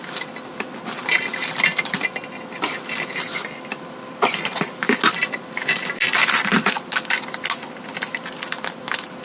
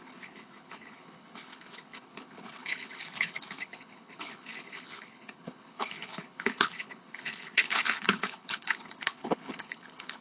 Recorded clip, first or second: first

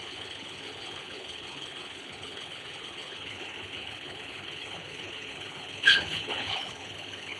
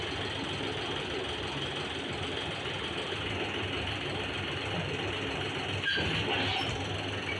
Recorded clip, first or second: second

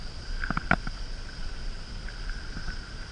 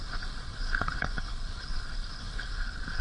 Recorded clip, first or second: first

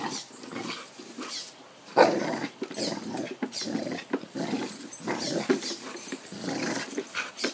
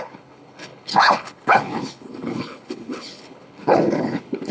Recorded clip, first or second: first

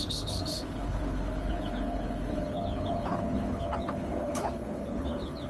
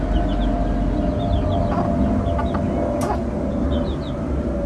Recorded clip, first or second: second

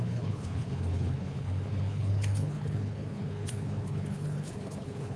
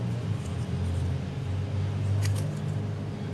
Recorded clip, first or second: second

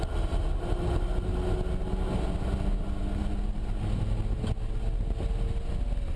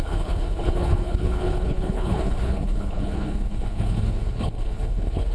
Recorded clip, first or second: first